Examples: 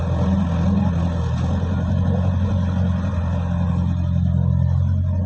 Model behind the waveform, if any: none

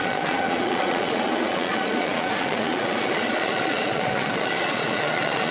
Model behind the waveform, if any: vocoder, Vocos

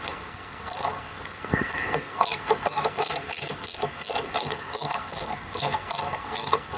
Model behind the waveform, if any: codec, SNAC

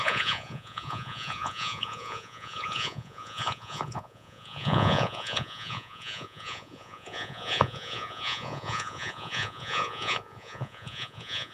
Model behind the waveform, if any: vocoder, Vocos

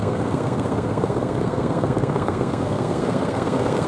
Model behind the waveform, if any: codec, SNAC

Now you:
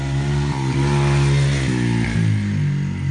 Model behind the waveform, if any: none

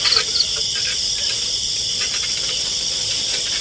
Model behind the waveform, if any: none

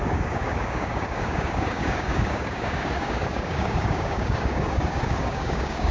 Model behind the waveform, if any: codec, DAC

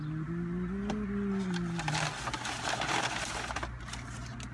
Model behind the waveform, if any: none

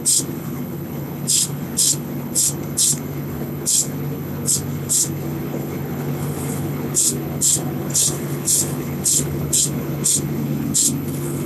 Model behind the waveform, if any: codec, HILCodec